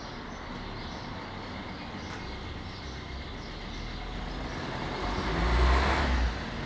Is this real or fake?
real